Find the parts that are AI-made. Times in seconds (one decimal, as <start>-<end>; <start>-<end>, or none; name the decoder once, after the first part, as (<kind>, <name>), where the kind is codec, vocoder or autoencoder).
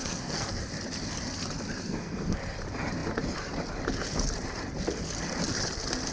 0.0-0.7 (codec, SNAC); 1.8-2.4